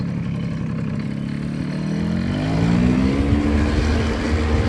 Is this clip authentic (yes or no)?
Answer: yes